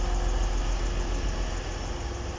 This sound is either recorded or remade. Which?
recorded